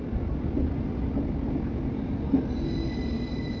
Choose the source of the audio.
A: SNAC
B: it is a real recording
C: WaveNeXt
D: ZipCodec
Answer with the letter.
B